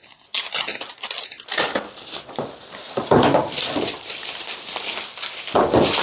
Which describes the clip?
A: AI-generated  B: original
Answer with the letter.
B